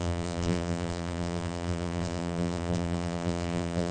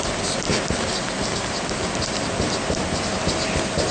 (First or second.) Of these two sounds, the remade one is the first